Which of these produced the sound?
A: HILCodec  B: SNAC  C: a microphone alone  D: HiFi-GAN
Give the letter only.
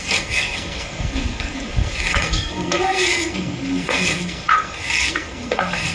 B